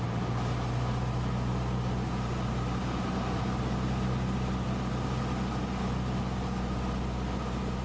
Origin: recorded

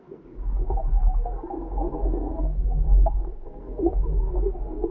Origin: remade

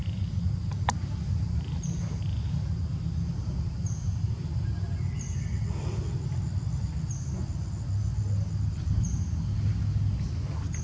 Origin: recorded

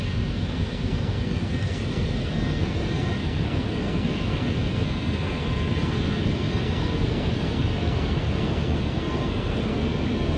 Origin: remade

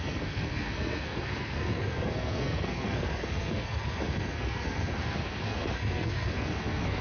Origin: remade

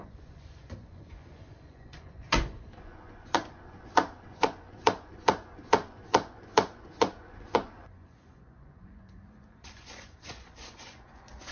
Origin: remade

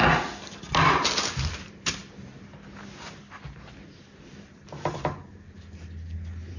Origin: recorded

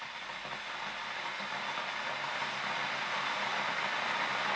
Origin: recorded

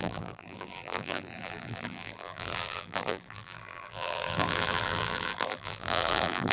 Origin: remade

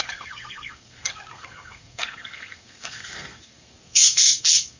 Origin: remade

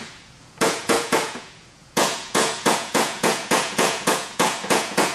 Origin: remade